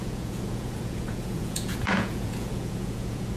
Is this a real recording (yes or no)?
no